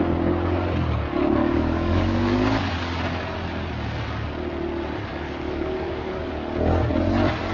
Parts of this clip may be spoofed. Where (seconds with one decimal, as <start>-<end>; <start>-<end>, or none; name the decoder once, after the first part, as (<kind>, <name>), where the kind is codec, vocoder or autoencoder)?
1.4-2.7 (codec, DAC); 5.1-6.3